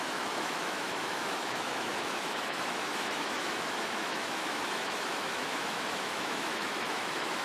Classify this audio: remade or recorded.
remade